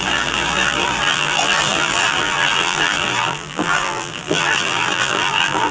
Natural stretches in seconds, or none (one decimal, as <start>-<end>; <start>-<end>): none